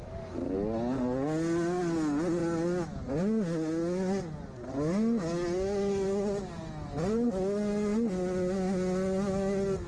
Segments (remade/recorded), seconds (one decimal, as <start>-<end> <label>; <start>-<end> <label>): 0.0-9.9 recorded